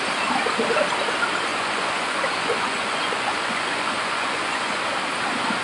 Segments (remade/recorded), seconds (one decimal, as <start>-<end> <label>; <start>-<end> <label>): 0.0-1.5 recorded; 1.5-4.8 remade; 4.8-5.6 recorded